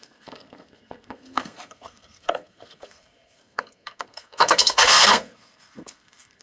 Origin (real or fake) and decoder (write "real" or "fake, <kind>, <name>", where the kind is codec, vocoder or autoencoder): fake, codec, SNAC